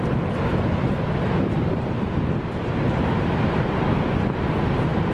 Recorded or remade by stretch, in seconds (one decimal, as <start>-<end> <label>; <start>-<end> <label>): 0.0-5.1 recorded